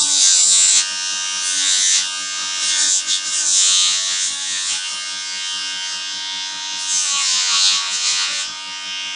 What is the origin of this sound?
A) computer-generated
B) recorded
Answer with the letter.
A